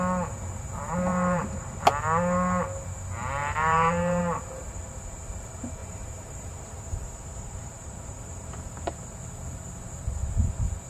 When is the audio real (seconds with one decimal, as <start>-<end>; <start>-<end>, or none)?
0.0-1.1; 1.8-3.4; 4.2-5.8; 9.0-10.9

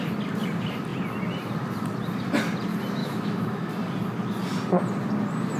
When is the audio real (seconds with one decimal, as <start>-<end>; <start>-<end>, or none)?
0.0-3.0; 3.7-5.6

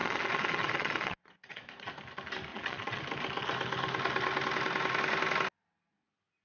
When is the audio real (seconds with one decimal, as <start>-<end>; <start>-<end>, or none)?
1.9-2.5; 3.0-6.4

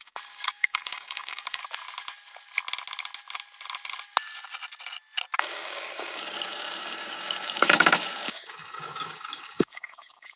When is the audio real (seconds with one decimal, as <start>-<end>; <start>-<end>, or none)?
1.6-5.4